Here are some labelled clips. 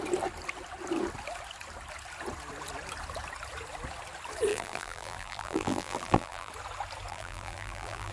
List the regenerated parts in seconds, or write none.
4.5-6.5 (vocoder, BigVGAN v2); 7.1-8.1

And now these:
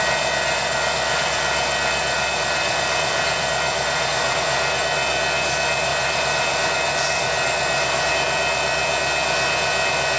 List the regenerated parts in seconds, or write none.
0.6-4.4 (vocoder, BigVGAN v2); 5.9-8.1

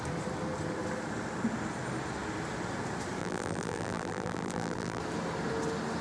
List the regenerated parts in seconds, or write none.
3.2-5.0 (vocoder, BigVGAN v2)

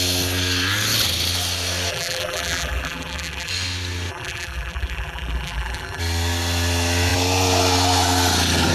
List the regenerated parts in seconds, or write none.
1.9-3.5 (vocoder, BigVGAN v2); 4.1-6.0

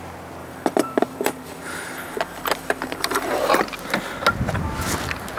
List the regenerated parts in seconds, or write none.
0.4-3.6 (vocoder, BigVGAN v2)

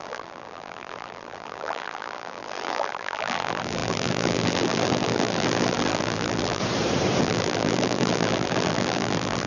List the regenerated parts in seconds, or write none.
0.0-6.6 (vocoder, BigVGAN v2); 7.2-9.5